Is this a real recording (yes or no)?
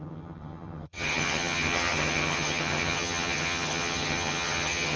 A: no